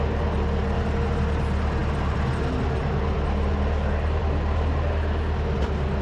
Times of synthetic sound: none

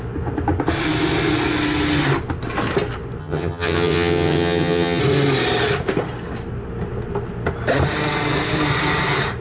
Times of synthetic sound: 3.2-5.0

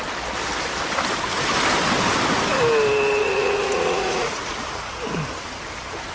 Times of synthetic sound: 3.2-5.0